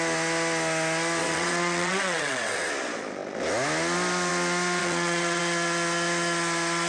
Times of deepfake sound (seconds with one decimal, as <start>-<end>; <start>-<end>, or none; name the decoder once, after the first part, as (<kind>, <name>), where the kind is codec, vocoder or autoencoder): 1.2-2.7 (vocoder, WaveNeXt); 4.8-5.4